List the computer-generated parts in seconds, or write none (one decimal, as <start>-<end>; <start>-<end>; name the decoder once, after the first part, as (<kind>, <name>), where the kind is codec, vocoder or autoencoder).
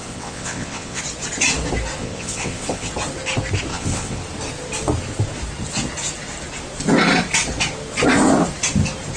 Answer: 0.0-1.0 (vocoder, WaveNeXt); 2.0-2.9; 3.7-4.2